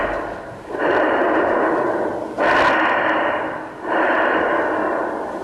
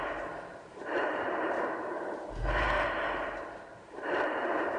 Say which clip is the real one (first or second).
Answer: first